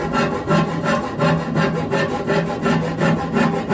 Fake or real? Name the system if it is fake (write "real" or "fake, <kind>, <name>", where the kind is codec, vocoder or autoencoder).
real